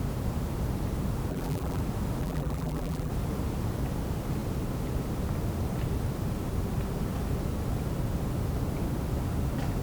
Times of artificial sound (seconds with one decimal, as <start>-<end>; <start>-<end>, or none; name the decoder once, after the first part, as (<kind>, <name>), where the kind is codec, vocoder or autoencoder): 1.3-1.8 (vocoder, BigVGAN v2); 2.2-3.1